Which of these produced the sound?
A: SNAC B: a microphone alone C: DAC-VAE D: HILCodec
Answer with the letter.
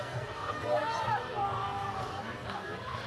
A